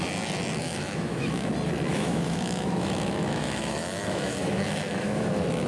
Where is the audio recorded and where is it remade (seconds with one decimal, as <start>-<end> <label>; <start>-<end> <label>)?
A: 0.0-0.6 recorded; 0.6-1.5 remade; 1.5-1.9 recorded; 1.9-5.3 remade; 5.3-5.7 recorded